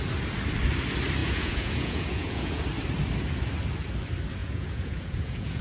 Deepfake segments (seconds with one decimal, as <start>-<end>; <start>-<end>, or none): 1.2-2.6; 4.4-5.6